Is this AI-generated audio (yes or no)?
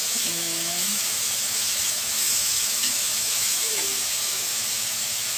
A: yes